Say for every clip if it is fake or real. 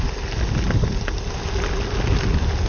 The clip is real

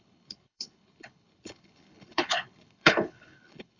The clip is fake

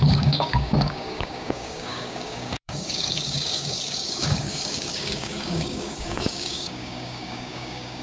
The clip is fake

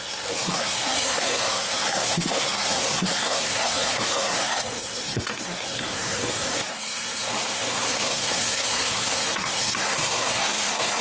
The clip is fake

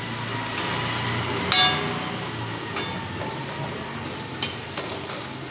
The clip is real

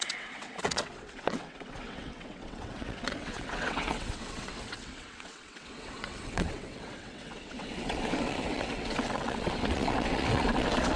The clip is fake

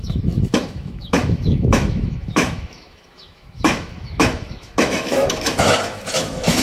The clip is fake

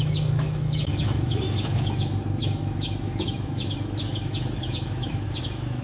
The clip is fake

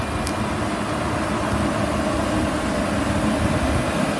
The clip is real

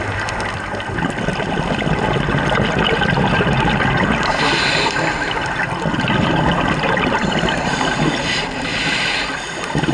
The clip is real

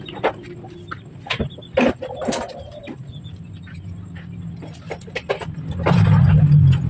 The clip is real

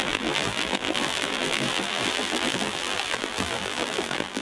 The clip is fake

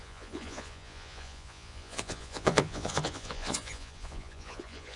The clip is fake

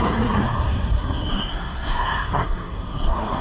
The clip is fake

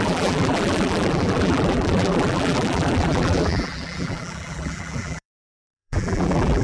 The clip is fake